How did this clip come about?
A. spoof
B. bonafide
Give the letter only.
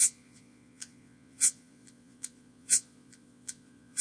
A